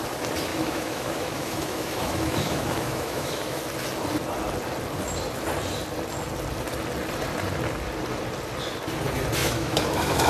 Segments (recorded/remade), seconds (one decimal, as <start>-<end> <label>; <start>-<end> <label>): 0.0-0.5 recorded; 0.5-3.6 remade; 3.6-9.4 recorded; 9.4-10.3 remade